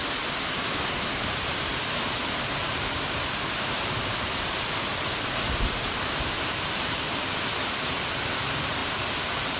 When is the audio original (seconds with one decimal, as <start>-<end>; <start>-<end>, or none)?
0.0-1.2; 4.9-5.7